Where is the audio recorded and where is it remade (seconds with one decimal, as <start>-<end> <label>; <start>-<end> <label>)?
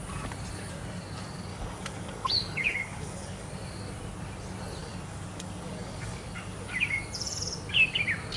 0.0-1.5 recorded; 1.5-3.5 remade; 3.5-4.8 recorded; 4.8-7.0 remade; 7.0-8.4 recorded